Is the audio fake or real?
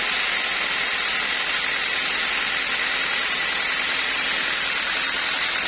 real